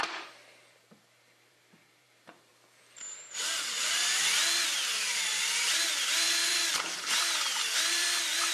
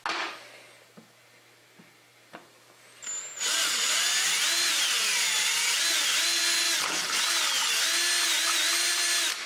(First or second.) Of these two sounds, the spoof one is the first